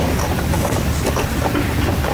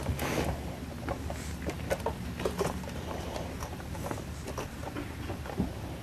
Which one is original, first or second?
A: first